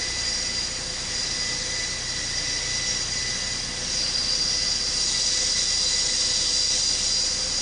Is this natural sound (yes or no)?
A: yes